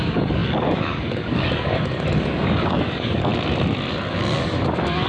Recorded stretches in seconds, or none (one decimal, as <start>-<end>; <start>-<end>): 3.3-4.1